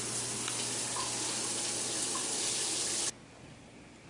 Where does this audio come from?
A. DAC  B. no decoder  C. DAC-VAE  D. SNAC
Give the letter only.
B